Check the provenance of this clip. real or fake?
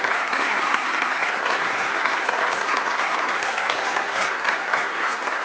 fake